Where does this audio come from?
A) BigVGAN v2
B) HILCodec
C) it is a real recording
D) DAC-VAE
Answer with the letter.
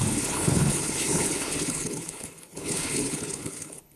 B